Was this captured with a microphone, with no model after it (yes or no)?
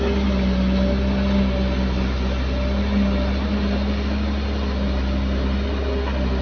yes